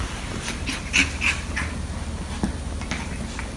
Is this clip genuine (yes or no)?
yes